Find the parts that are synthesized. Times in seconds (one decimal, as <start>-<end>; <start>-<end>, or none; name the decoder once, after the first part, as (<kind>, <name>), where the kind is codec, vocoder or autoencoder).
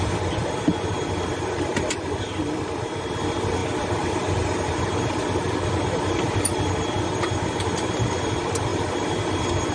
0.0-6.5 (vocoder, BigVGAN v2); 7.4-9.7